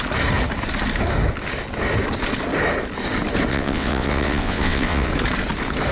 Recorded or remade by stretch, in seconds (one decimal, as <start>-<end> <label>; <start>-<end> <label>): 0.0-3.5 recorded; 3.5-5.1 remade; 5.1-5.9 recorded